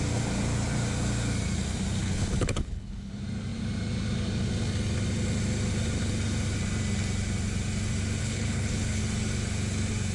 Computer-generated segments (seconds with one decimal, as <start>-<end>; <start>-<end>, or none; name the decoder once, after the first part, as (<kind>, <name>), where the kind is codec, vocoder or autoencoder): 2.0-3.1 (codec, HILCodec); 8.2-9.0

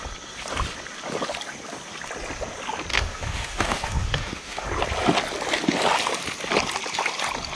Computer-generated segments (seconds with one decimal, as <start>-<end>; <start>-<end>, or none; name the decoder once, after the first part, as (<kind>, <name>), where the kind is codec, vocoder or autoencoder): 2.9-4.7 (autoencoder, DAC-VAE)